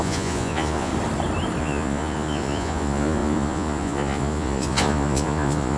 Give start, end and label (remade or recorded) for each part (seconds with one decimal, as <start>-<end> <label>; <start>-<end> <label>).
0.0-0.9 remade; 0.9-1.6 recorded; 1.6-5.8 remade